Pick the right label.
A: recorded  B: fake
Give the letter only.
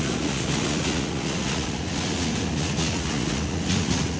B